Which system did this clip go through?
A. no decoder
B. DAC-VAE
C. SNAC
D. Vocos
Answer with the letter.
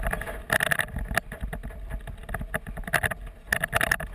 A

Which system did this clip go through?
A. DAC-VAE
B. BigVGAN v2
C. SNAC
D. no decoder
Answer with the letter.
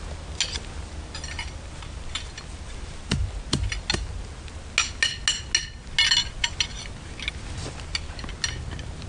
D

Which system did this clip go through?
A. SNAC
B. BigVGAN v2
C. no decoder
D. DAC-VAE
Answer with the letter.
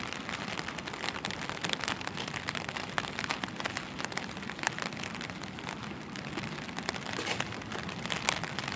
C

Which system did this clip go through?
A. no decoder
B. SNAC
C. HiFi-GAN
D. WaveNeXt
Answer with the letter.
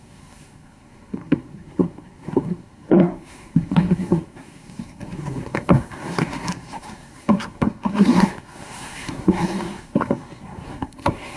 B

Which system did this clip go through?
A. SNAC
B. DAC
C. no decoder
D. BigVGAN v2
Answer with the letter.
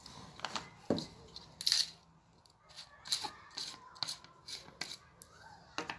C